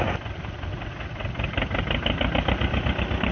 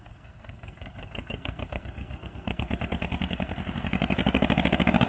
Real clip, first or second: first